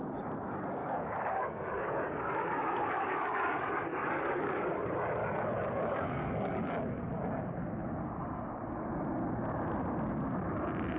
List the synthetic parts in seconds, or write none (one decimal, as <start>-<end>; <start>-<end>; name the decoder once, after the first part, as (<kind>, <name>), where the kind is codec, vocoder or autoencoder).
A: 0.8-4.7 (codec, DAC); 5.2-6.7